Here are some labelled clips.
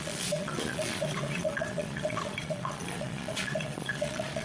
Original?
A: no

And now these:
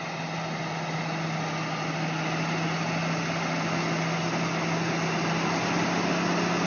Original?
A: yes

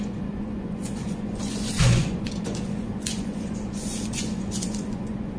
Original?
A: no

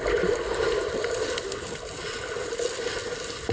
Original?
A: yes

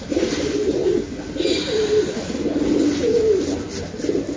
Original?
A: yes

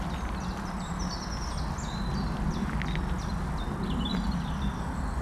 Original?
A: yes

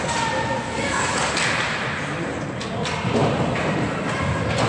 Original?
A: yes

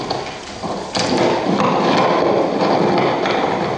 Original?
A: yes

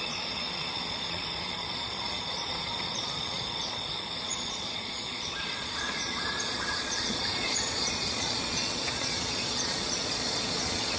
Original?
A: no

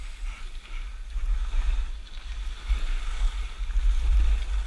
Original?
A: yes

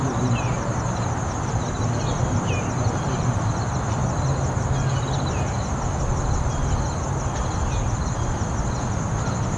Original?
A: yes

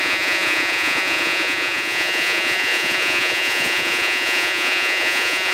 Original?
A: no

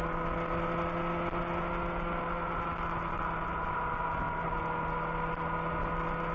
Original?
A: yes